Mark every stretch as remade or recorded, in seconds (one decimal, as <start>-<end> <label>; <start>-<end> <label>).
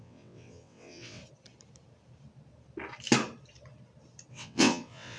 0.0-1.2 remade; 1.2-4.3 recorded; 4.3-5.2 remade